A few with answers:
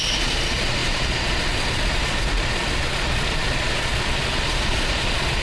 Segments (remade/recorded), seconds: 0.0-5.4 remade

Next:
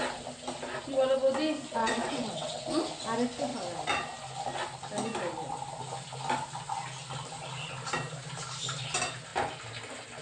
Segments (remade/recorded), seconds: 0.0-1.8 recorded; 1.8-2.6 remade; 2.6-10.2 recorded

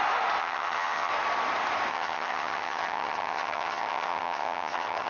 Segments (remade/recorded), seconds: 0.0-0.4 recorded; 0.4-1.1 remade; 1.1-1.9 recorded; 1.9-5.1 remade

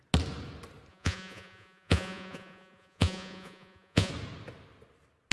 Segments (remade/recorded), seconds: 0.0-0.9 recorded; 0.9-4.1 remade; 4.1-5.3 recorded

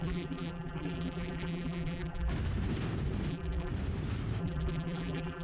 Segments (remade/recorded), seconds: 0.0-2.3 remade; 2.3-3.3 recorded; 3.3-3.7 remade; 3.7-4.4 recorded; 4.4-5.4 remade